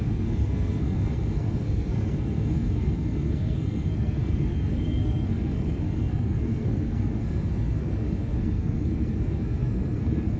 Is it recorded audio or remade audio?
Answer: remade